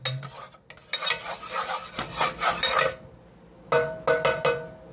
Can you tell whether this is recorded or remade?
recorded